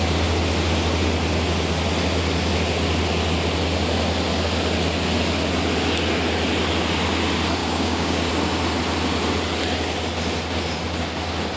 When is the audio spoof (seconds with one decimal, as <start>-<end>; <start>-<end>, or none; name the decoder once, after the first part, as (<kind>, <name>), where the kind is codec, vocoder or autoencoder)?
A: 7.6-8.3 (codec, DAC)